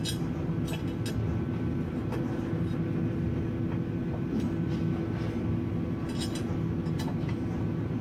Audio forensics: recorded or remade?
recorded